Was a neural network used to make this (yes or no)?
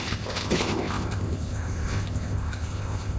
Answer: yes